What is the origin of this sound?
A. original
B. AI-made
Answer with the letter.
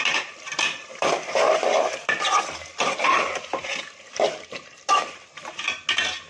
A